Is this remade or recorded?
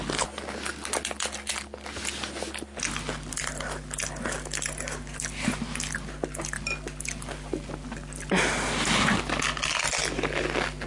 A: recorded